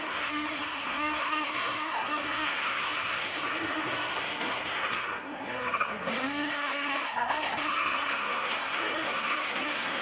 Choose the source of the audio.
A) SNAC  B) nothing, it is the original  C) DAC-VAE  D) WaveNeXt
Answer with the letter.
A